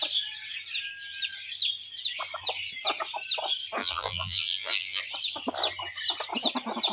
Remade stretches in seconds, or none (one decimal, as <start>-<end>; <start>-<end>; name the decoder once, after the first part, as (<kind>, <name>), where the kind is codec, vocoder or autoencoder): 3.8-5.0 (vocoder, BigVGAN v2)

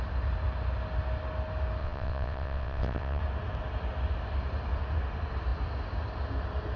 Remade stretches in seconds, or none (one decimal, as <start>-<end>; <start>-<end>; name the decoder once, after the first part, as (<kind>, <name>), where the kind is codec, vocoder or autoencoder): 1.8-3.2 (vocoder, WaveNeXt)

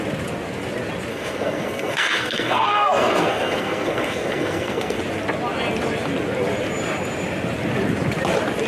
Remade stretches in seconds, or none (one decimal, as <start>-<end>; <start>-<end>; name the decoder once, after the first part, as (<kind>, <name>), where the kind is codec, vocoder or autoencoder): 1.1-5.0 (codec, SNAC)